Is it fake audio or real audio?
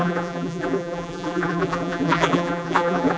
fake